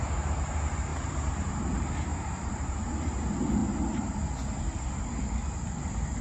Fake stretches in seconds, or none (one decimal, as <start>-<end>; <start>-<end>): 0.9-1.6; 2.1-2.9